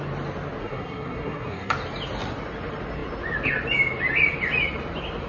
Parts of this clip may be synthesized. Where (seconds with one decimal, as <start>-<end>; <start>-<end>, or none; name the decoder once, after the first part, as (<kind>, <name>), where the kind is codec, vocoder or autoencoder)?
0.6-1.7 (codec, SNAC)